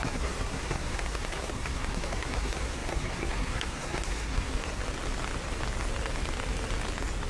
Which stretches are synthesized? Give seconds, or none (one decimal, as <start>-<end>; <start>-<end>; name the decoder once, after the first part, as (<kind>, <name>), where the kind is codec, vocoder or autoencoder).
0.0-4.8 (codec, SNAC)